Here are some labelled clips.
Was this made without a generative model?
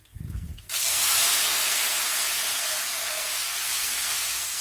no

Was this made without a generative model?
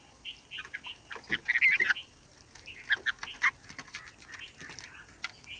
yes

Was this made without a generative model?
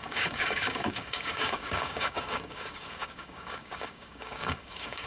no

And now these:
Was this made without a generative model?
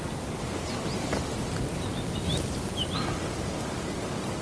yes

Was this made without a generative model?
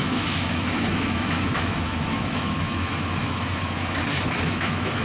no